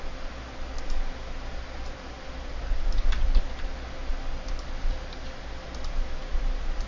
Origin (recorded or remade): recorded